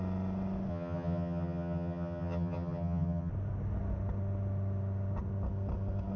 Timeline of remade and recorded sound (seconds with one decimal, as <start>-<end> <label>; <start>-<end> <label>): 0.0-0.7 recorded; 0.7-3.3 remade; 3.3-6.2 recorded